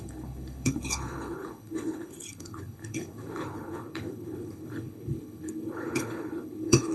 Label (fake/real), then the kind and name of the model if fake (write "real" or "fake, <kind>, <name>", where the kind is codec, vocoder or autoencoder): fake, codec, HILCodec